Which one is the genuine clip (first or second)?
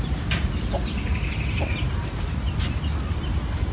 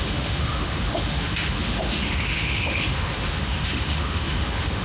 first